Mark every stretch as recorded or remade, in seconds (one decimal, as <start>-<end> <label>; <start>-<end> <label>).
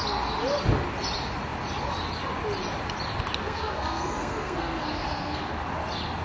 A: 0.0-3.4 recorded; 3.4-5.5 remade; 5.5-6.2 recorded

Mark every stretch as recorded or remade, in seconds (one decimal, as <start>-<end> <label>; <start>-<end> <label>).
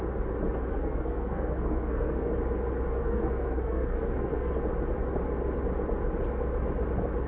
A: 0.0-0.7 recorded; 0.7-2.3 remade; 2.3-2.9 recorded; 2.9-4.5 remade; 4.5-7.3 recorded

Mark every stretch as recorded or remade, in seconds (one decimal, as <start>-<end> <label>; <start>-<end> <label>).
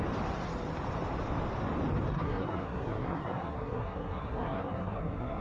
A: 0.0-2.1 recorded; 2.1-5.4 remade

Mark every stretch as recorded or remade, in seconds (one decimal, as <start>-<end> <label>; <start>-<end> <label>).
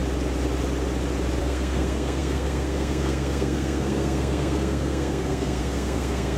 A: 0.0-1.4 recorded; 1.4-6.4 remade